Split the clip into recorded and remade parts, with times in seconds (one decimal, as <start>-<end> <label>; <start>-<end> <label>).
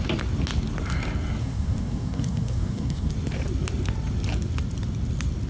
0.0-1.4 recorded; 1.4-3.1 remade; 3.1-5.5 recorded